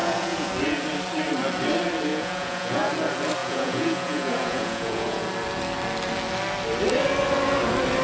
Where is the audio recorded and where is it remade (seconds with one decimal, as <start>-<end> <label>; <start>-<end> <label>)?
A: 0.0-0.5 remade; 0.5-2.1 recorded; 2.1-2.9 remade; 2.9-3.4 recorded; 3.4-5.2 remade; 5.2-8.0 recorded